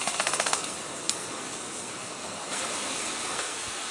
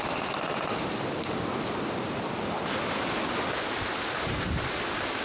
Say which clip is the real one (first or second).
second